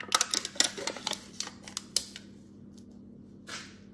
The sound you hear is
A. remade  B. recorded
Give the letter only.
B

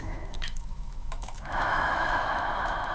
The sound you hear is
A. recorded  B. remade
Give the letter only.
B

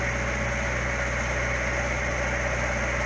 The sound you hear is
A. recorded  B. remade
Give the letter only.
A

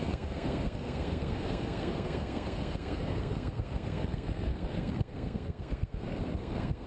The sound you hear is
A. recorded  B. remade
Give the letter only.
B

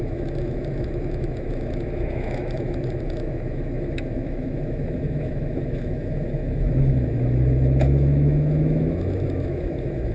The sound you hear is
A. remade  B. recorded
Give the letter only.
A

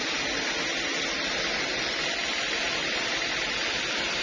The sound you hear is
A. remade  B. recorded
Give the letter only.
B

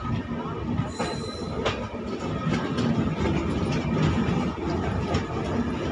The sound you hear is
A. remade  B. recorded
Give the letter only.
B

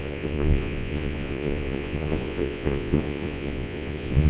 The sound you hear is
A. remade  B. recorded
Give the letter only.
A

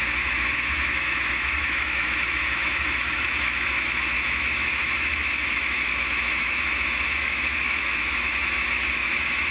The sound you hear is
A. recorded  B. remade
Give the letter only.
B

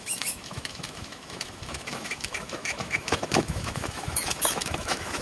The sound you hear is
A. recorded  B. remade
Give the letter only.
B